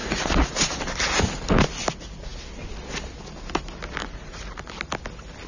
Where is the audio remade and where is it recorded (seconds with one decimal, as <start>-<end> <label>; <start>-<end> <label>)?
0.0-0.5 remade; 0.5-4.0 recorded; 4.0-4.7 remade; 4.7-5.5 recorded